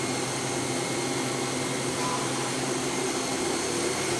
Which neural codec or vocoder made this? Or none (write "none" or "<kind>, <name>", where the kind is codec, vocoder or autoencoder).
none